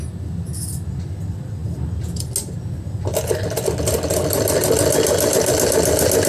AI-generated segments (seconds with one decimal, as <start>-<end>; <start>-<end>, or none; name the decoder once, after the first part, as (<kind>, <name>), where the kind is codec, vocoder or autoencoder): none